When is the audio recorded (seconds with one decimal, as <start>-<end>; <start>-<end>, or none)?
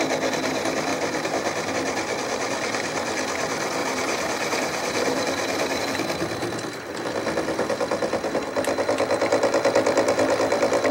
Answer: 0.0-0.9; 1.7-3.8; 5.8-10.9